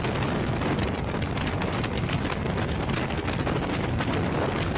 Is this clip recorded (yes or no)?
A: yes